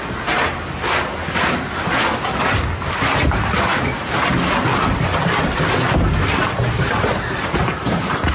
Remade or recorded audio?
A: recorded